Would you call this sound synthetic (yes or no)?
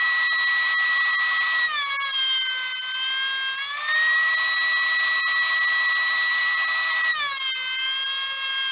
no